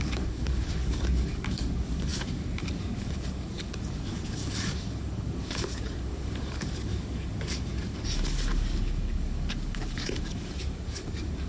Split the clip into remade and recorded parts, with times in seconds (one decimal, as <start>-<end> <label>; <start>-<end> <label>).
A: 0.0-11.5 remade